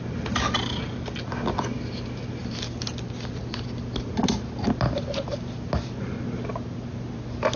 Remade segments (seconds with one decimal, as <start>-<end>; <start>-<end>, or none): none